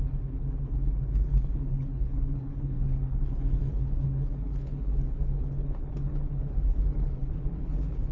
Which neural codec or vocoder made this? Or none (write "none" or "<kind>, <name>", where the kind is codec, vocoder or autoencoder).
codec, HILCodec